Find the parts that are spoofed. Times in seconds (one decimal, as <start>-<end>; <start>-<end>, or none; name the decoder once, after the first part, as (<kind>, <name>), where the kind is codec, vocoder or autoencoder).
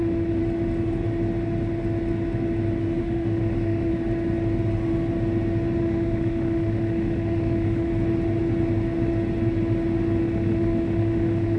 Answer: 0.0-0.4 (autoencoder, DAC-VAE); 3.0-3.9; 5.8-7.9; 10.2-11.6